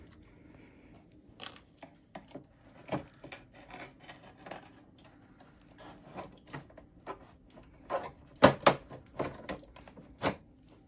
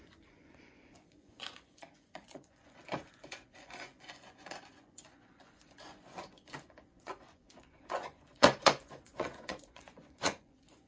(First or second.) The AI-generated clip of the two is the second